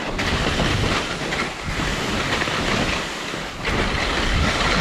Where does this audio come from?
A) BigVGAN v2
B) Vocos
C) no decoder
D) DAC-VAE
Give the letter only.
C